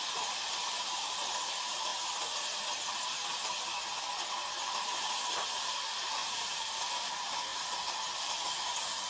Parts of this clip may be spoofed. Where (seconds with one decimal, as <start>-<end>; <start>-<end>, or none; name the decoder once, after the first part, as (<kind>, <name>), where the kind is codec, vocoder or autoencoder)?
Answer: 0.0-1.9 (vocoder, BigVGAN v2); 4.3-9.1